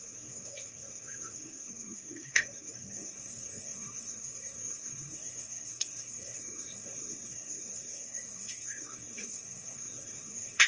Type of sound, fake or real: fake